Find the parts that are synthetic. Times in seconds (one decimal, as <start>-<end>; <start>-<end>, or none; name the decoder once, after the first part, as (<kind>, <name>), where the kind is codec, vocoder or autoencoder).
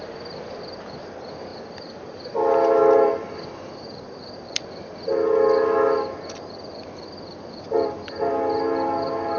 none